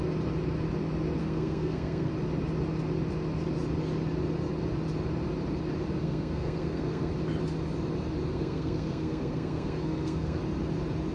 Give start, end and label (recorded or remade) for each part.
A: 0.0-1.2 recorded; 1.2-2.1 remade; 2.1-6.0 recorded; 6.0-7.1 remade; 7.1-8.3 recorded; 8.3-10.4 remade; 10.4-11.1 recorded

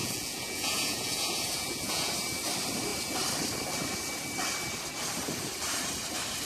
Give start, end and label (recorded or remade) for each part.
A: 0.0-2.1 remade; 2.1-6.5 recorded

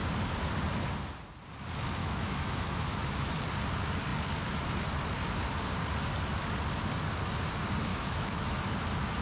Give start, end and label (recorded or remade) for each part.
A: 0.0-2.0 recorded; 2.0-3.4 remade; 3.4-7.9 recorded; 7.9-8.6 remade; 8.6-9.2 recorded